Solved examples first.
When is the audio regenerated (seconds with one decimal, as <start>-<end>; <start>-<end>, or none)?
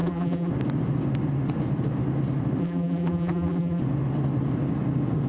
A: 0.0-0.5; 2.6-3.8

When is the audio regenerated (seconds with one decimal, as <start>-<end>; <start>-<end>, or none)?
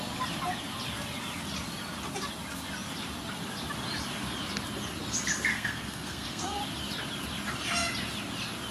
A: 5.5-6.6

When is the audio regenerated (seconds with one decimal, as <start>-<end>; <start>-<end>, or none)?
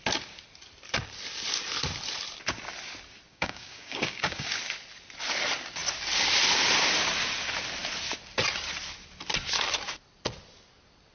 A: 3.3-4.6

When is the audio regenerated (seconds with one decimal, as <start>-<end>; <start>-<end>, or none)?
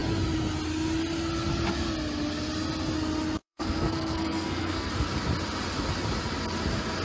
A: 3.4-4.9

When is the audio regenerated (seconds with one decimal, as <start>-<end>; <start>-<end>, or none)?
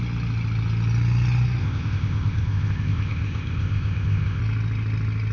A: 1.6-4.4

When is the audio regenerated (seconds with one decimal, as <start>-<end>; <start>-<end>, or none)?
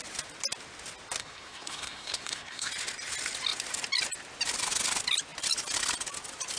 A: 1.2-2.7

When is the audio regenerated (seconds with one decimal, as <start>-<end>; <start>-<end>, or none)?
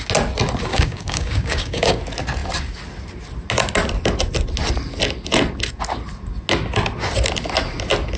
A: 0.7-2.0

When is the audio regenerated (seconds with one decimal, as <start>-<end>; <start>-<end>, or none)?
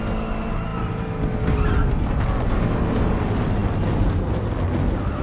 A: 0.7-2.2